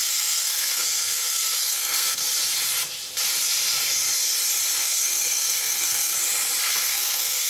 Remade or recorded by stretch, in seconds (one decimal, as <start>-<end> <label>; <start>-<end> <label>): 0.0-2.2 remade; 2.2-4.8 recorded; 4.8-6.1 remade; 6.1-6.7 recorded; 6.7-7.5 remade